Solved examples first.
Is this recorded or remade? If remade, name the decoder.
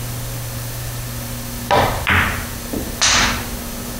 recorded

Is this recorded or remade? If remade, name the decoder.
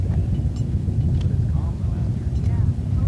remade, vocoder, BigVGAN v2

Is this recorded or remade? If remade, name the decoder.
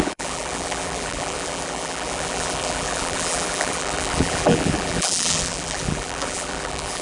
remade, vocoder, BigVGAN v2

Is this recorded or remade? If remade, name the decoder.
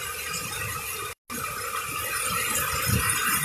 recorded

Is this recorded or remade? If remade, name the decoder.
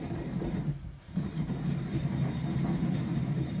remade, vocoder, BigVGAN v2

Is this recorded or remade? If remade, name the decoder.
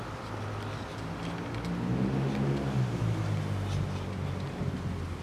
recorded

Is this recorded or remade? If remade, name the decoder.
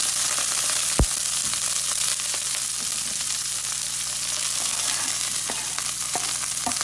remade, vocoder, BigVGAN v2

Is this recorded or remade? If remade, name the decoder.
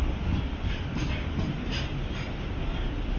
recorded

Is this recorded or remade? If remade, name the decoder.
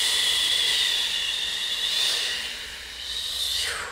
remade, vocoder, BigVGAN v2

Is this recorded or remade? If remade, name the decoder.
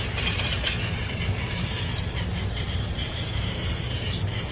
remade, vocoder, BigVGAN v2